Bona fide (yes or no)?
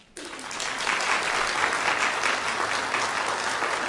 yes